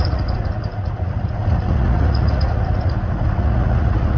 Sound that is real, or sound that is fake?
fake